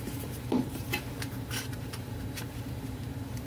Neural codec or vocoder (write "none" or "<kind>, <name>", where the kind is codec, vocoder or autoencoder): vocoder, BigVGAN v2